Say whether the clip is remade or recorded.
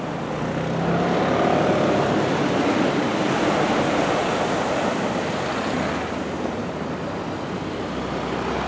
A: recorded